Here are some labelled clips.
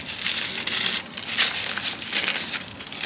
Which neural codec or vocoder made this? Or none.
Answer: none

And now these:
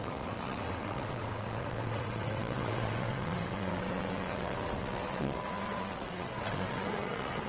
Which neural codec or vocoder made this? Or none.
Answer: vocoder, WaveNeXt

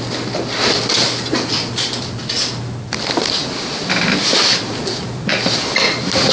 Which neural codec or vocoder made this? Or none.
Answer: none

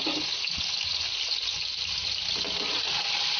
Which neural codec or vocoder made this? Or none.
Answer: none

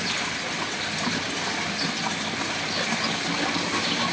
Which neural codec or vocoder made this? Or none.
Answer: none